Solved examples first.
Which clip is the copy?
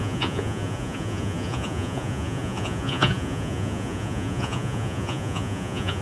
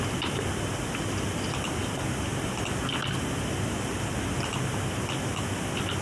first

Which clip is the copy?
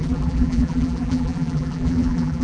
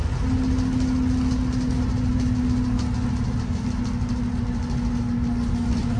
first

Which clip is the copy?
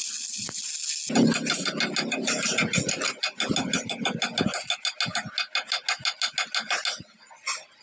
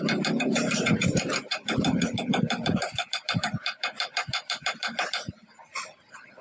second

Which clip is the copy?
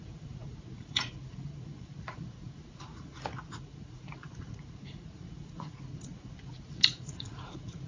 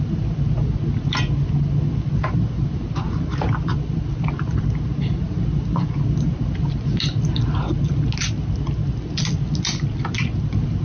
first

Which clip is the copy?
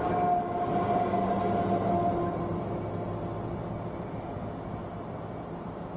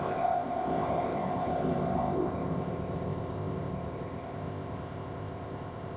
second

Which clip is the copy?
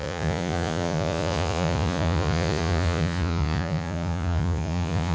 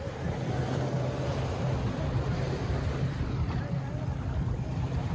first